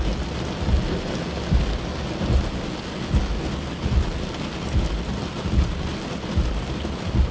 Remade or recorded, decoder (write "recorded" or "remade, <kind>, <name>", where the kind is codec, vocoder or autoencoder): recorded